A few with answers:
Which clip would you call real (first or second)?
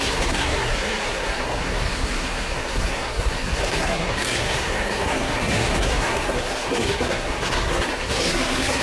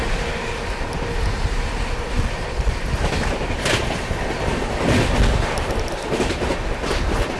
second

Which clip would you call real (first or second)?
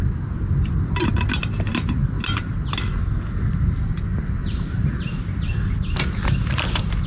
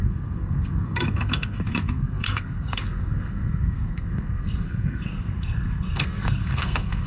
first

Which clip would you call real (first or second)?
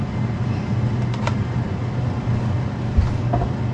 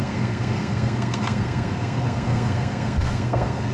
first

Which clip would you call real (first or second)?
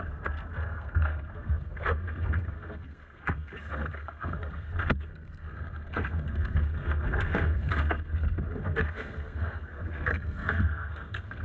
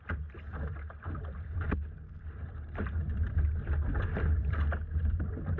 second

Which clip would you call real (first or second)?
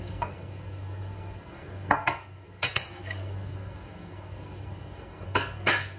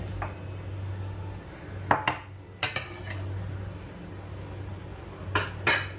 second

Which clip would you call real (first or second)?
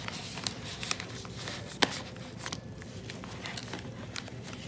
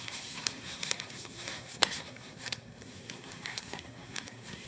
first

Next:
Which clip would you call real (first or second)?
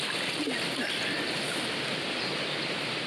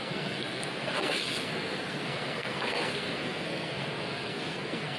first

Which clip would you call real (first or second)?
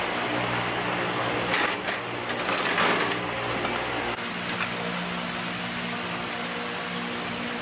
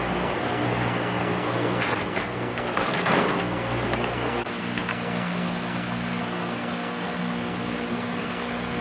first